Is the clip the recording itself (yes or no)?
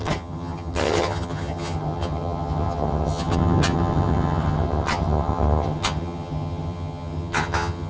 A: no